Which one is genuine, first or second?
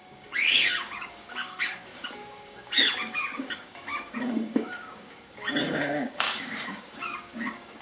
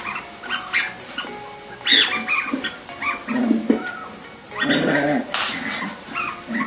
second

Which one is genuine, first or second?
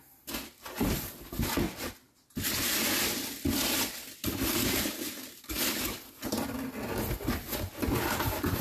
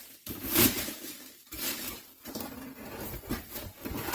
first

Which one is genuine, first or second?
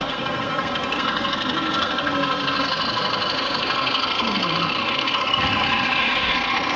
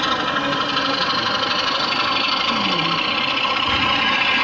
second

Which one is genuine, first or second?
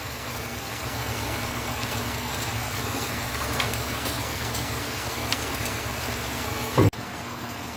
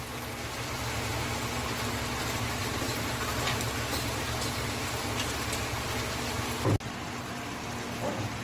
second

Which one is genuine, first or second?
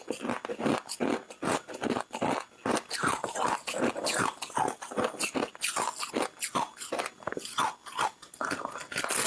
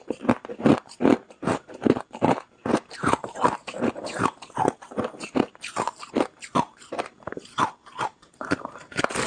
first